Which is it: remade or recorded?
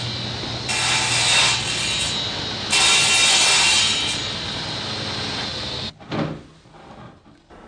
recorded